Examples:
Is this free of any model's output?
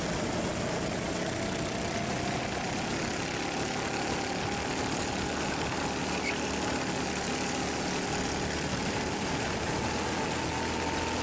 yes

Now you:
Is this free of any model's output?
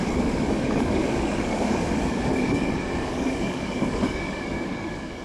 no